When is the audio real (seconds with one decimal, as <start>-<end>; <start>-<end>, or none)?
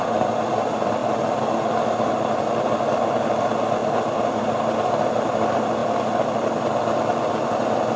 1.0-3.4; 3.8-4.4